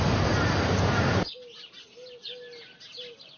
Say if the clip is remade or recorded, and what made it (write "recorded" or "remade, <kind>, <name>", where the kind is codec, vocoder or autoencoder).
recorded